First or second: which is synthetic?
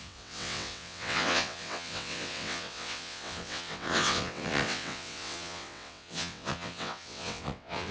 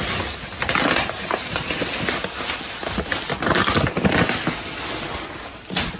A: first